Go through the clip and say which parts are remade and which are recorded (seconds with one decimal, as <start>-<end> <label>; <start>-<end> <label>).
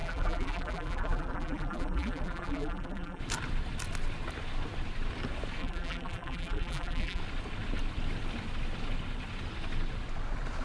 0.0-3.2 remade; 3.2-5.6 recorded; 5.6-7.2 remade; 7.2-10.6 recorded